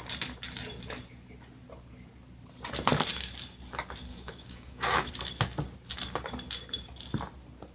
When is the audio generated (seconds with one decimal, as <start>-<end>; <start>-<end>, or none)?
4.1-5.1